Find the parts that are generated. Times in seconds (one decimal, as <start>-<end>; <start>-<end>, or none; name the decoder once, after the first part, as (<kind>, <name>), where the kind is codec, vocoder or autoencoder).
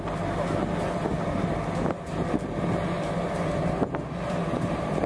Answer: none